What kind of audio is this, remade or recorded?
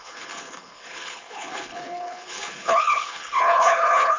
remade